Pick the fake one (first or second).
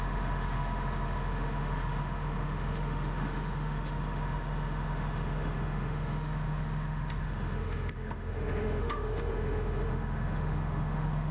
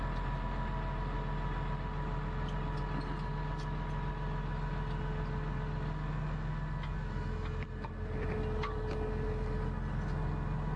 first